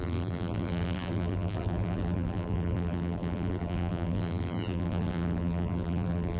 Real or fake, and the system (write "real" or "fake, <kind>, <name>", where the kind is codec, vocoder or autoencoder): fake, vocoder, BigVGAN v2